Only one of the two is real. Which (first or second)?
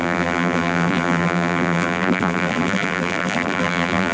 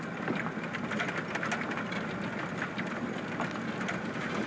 second